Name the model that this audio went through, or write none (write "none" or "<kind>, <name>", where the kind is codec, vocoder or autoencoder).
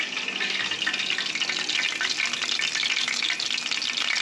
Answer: none